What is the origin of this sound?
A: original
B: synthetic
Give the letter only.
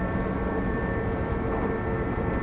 B